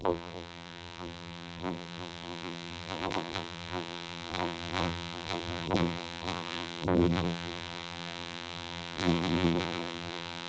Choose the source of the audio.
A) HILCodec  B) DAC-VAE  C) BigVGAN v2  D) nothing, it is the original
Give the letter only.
C